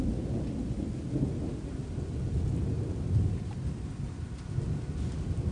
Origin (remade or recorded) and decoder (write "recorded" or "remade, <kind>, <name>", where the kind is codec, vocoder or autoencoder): recorded